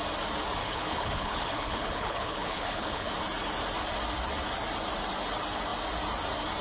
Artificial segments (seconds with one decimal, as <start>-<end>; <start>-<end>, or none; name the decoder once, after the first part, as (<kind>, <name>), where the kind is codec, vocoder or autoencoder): 0.6-3.1 (codec, HILCodec)